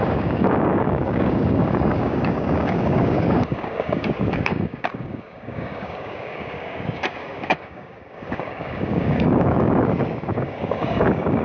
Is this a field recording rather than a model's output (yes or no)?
no